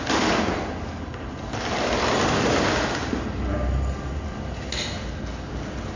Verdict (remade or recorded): recorded